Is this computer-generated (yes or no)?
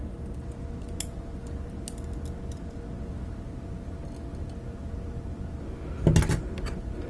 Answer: no